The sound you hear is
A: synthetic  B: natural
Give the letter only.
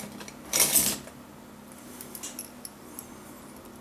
B